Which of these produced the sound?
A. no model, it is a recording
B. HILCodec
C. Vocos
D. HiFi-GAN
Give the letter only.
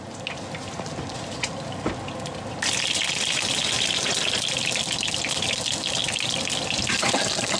A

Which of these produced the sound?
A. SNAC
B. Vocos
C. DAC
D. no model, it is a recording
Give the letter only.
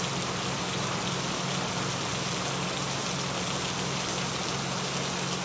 D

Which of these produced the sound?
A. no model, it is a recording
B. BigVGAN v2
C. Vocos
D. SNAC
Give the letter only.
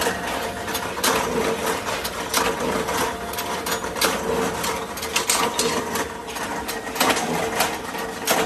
A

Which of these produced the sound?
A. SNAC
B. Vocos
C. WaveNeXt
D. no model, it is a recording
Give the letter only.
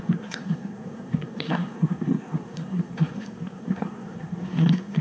A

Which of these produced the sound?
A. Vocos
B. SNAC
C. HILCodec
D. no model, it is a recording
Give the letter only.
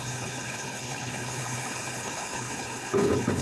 C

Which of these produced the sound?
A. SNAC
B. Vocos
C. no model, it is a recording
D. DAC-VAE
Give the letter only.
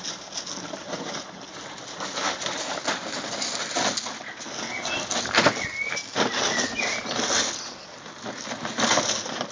C